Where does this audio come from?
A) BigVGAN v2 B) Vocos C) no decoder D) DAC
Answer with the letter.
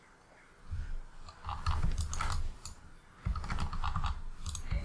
C